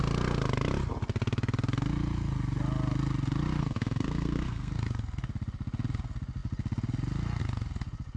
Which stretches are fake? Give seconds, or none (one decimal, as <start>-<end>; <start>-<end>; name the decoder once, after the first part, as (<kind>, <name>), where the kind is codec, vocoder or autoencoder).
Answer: 3.6-4.7 (codec, SNAC)